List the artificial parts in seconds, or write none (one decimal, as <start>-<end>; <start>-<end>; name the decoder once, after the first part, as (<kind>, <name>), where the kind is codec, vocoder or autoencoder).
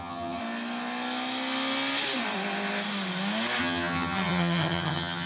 0.0-0.4 (vocoder, HiFi-GAN); 3.6-5.3